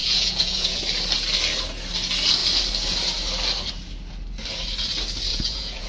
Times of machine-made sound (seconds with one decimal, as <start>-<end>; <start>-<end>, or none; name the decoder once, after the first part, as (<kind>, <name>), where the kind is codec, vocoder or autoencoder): 0.0-0.8 (vocoder, Vocos); 5.3-5.9